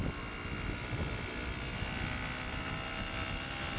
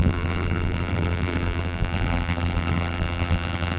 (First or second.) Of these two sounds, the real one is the first